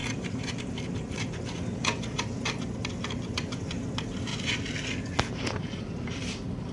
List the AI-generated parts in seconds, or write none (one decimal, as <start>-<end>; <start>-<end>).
0.0-2.9